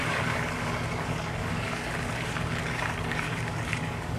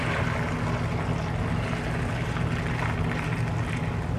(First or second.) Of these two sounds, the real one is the second